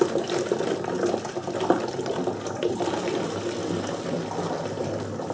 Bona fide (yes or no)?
yes